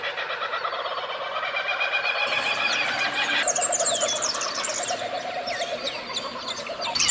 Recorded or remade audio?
recorded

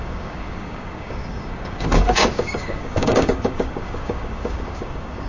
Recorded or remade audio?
remade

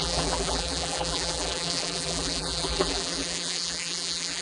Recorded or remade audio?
remade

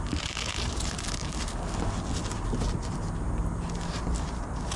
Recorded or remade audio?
recorded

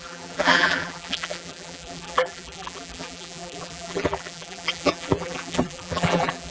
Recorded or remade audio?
remade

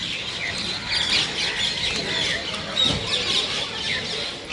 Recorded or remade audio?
recorded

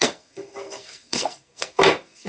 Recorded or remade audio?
remade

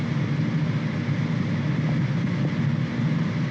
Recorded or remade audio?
recorded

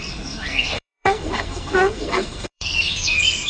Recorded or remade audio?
remade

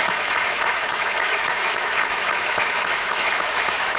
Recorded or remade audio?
remade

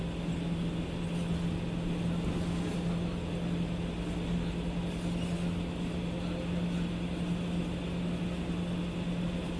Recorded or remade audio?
recorded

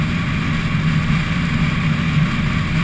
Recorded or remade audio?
recorded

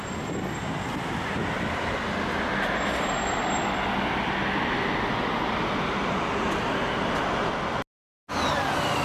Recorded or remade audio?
recorded